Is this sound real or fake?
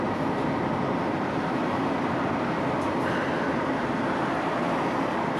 real